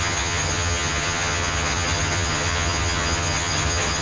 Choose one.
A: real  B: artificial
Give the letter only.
B